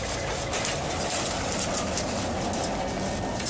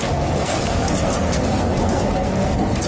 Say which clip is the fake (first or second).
second